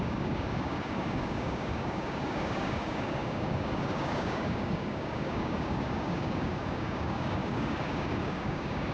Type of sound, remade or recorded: remade